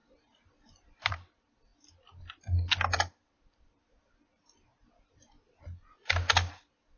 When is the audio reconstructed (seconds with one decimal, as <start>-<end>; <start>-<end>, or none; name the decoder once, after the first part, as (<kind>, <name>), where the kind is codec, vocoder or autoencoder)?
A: none